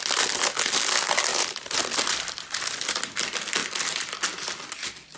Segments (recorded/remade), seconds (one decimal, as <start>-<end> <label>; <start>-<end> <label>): 0.0-1.3 recorded; 1.3-1.8 remade; 1.8-5.2 recorded